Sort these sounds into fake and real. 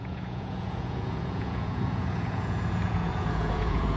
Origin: fake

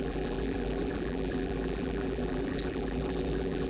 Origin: fake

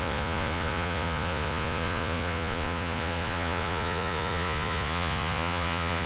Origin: fake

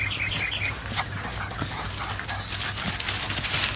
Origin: real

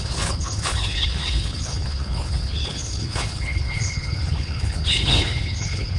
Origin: fake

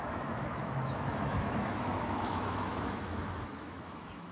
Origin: fake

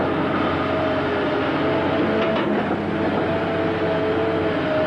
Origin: real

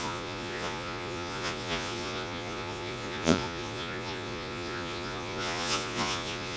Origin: fake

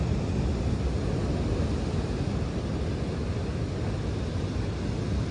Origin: real